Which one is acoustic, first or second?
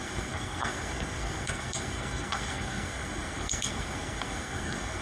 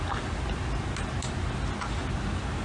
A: second